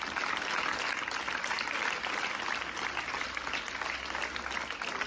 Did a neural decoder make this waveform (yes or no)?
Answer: no